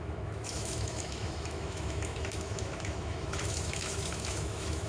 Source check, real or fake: fake